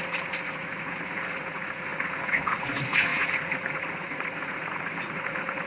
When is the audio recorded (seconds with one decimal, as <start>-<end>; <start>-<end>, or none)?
none